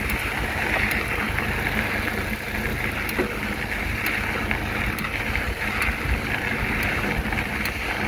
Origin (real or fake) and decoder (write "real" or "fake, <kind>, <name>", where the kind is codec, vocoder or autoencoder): real